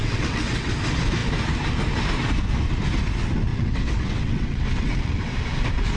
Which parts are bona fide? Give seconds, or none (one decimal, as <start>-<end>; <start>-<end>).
0.7-3.5; 5.2-6.0